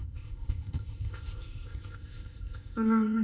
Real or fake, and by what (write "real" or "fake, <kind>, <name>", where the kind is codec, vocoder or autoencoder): fake, codec, ZipCodec